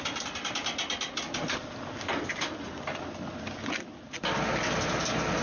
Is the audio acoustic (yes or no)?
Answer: yes